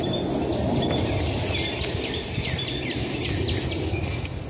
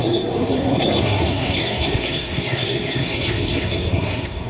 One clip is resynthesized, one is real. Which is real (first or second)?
first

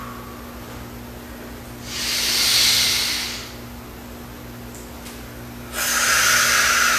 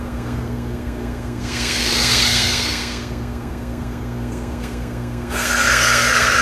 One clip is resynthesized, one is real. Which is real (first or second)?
first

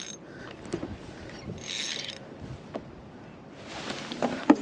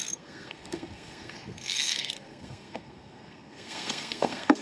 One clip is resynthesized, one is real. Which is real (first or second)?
first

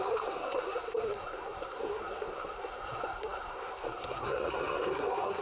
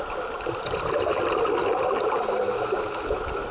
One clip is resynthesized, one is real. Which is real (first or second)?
second